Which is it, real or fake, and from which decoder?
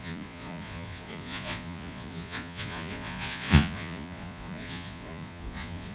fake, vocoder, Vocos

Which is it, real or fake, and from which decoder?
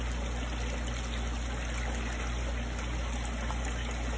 real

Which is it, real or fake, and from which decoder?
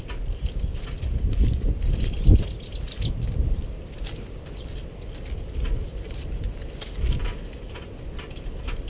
real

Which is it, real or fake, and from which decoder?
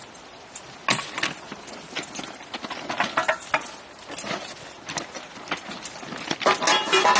real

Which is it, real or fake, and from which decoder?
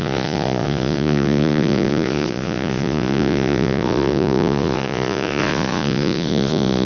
fake, vocoder, Vocos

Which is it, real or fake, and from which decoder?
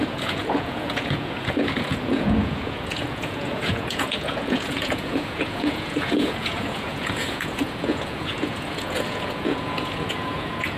fake, vocoder, Vocos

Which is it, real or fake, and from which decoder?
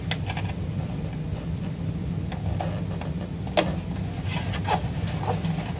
real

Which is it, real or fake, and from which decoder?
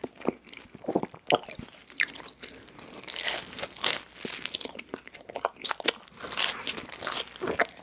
real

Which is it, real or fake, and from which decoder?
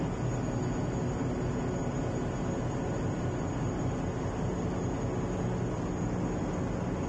real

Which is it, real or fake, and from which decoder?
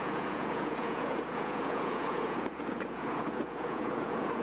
fake, vocoder, Vocos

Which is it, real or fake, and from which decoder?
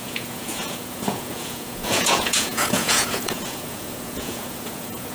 fake, vocoder, Vocos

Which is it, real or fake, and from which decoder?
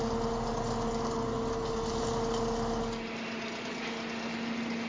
real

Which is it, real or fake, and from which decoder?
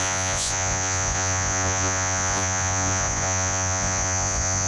fake, vocoder, Vocos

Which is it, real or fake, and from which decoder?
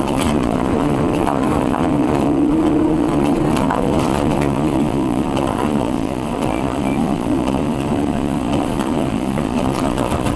fake, vocoder, Vocos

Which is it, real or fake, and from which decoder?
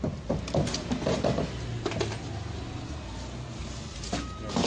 real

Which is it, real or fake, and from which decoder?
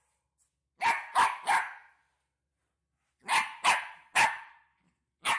real